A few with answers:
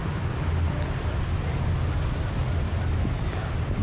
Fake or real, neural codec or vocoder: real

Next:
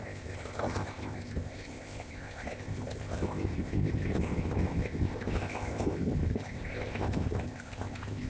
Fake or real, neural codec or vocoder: fake, codec, ZipCodec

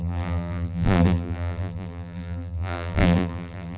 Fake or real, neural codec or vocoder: fake, vocoder, BigVGAN v2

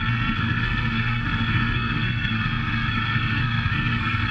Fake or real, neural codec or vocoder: fake, codec, SNAC